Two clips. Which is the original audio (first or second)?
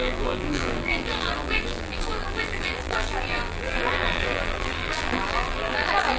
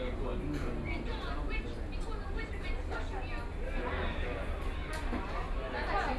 second